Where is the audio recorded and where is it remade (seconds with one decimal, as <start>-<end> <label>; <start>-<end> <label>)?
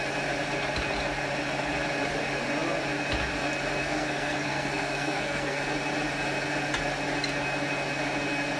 0.0-3.8 recorded; 3.8-5.6 remade; 5.6-8.6 recorded